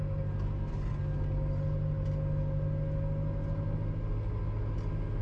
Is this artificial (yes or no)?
no